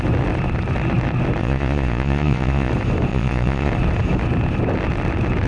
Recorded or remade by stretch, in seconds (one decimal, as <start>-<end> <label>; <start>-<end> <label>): 0.0-1.4 recorded; 1.4-2.7 remade; 2.7-3.1 recorded; 3.1-3.7 remade; 3.7-5.5 recorded